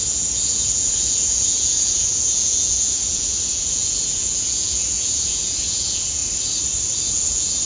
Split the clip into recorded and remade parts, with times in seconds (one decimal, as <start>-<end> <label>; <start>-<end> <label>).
0.0-6.2 remade; 6.2-7.1 recorded; 7.1-7.7 remade